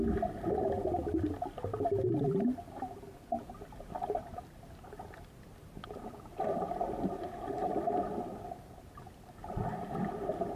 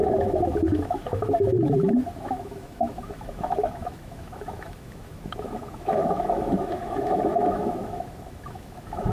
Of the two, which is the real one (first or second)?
first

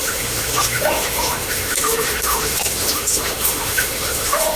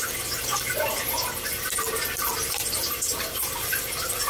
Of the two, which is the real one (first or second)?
second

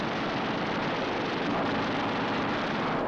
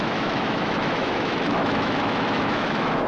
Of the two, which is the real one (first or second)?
first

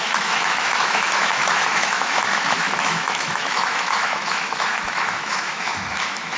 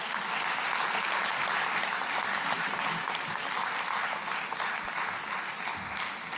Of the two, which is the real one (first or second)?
second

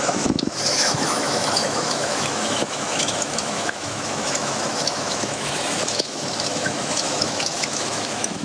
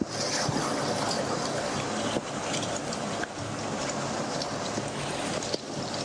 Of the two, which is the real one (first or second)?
second